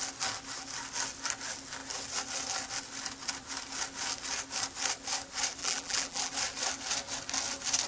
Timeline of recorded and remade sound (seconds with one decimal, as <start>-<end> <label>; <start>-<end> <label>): 0.0-5.6 recorded; 5.6-6.3 remade; 6.3-7.9 recorded